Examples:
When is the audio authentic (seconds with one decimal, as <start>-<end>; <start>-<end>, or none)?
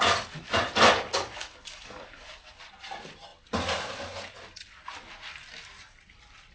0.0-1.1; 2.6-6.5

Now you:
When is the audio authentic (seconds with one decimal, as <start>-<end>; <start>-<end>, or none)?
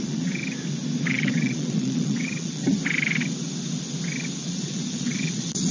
0.4-1.1; 2.6-4.5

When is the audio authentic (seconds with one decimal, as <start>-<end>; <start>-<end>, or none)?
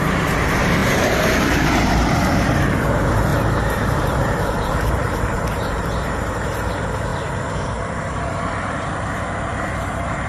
none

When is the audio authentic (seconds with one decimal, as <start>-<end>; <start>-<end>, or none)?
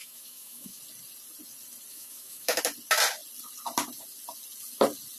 0.8-1.9; 2.6-5.2